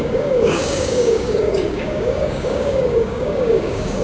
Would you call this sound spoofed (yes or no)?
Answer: yes